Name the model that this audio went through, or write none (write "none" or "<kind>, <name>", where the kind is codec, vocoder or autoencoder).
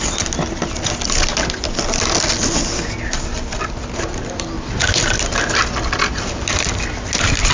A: none